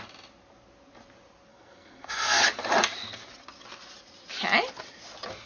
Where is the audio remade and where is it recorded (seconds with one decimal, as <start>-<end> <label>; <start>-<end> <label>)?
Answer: 0.0-1.5 recorded; 1.5-2.4 remade; 2.4-5.5 recorded